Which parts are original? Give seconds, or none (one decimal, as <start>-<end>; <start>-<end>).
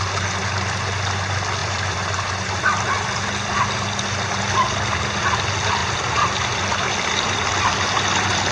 0.0-1.6; 2.6-8.5